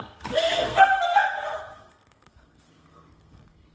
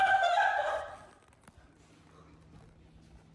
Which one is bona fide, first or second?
second